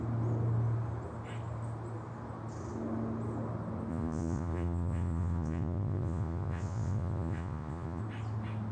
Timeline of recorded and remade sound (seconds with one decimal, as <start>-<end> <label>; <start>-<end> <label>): 0.0-3.9 recorded; 3.9-8.0 remade; 8.0-8.7 recorded